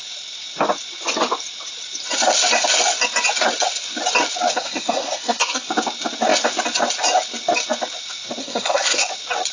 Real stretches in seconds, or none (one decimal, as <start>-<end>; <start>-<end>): 0.0-4.5; 5.7-8.4; 9.1-9.5